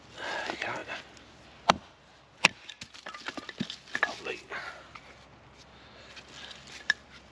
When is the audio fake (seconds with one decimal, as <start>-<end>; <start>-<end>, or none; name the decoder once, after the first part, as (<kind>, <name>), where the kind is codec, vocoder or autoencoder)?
none